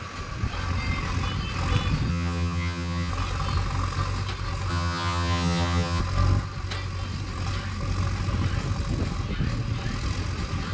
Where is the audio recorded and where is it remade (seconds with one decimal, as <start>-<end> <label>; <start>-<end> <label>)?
0.0-2.1 recorded; 2.1-3.1 remade; 3.1-4.7 recorded; 4.7-6.0 remade; 6.0-10.7 recorded